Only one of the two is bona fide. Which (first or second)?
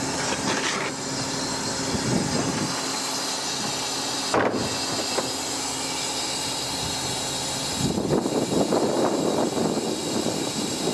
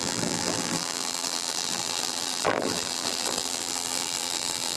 first